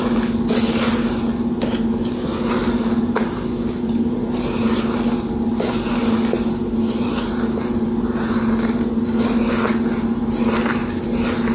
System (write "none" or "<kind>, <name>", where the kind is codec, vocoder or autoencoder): none